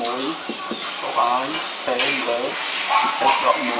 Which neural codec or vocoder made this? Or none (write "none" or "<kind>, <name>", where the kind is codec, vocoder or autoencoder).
none